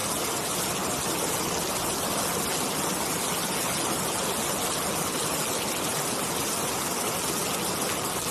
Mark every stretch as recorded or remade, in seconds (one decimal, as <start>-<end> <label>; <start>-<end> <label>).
0.0-8.3 recorded